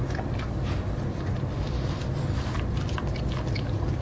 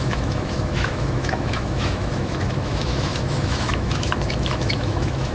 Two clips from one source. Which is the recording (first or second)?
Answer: first